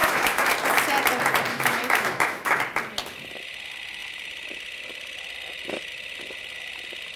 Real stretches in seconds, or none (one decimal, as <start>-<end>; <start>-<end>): 0.5-1.5; 2.6-7.2